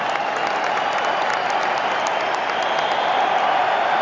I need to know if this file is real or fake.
real